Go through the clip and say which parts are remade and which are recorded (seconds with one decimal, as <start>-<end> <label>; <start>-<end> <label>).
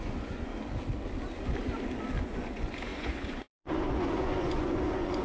0.0-0.5 remade; 0.5-2.2 recorded; 2.2-5.2 remade